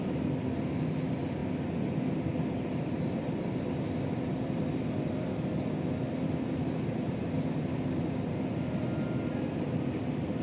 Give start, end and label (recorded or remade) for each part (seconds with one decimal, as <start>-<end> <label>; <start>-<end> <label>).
0.0-10.4 recorded